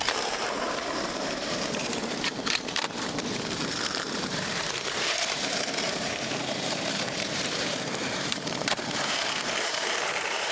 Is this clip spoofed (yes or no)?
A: yes